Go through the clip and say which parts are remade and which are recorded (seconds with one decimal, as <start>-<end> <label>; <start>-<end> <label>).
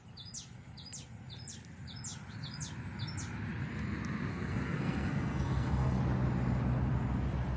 0.0-4.3 recorded; 4.3-6.0 remade; 6.0-7.6 recorded